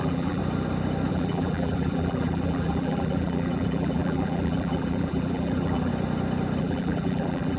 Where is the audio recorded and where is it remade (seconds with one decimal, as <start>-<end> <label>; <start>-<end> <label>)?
0.0-0.4 remade; 0.4-1.1 recorded; 1.1-5.9 remade; 5.9-6.6 recorded; 6.6-7.6 remade